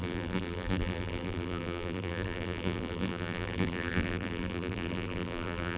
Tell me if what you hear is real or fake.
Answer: fake